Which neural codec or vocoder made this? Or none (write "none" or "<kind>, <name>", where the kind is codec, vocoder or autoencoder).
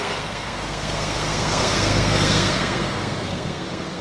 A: codec, SNAC